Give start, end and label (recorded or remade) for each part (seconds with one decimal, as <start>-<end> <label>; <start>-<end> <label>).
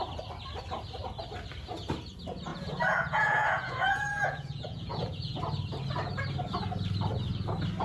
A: 0.0-2.5 recorded; 2.5-5.4 remade; 5.4-7.8 recorded